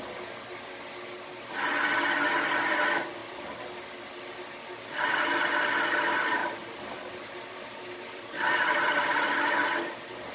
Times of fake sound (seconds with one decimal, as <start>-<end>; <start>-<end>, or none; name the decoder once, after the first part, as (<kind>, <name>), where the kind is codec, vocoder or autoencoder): 6.4-9.0 (vocoder, BigVGAN v2)